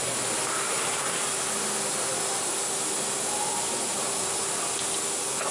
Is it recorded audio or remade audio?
recorded